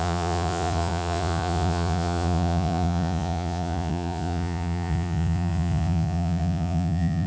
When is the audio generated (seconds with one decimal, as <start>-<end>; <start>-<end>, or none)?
0.0-7.3